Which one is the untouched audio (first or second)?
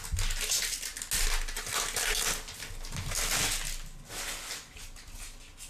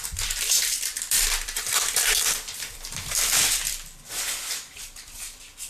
first